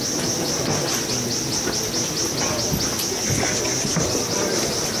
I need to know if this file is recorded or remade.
recorded